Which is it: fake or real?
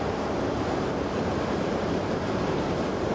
fake